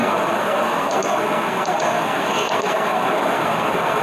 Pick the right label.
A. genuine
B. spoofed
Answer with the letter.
B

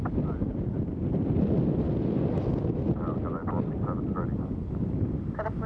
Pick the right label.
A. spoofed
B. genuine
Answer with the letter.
B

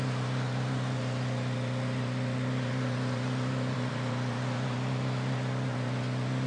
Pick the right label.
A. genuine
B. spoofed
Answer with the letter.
A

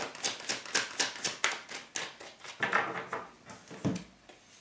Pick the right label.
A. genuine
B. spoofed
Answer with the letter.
A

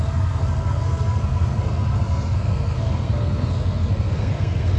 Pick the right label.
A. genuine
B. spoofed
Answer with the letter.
B